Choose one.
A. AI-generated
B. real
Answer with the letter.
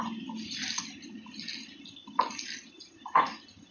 B